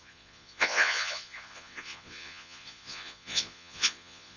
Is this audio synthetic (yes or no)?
yes